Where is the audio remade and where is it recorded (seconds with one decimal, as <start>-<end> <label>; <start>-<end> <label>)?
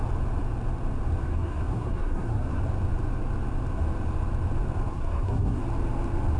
0.0-1.2 recorded; 1.2-2.6 remade; 2.6-4.9 recorded; 4.9-5.6 remade; 5.6-6.4 recorded